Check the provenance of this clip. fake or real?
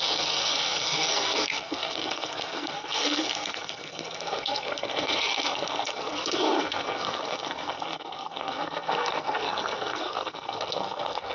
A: fake